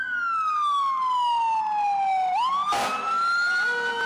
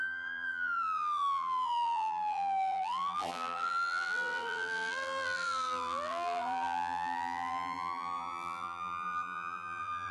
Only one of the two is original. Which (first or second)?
first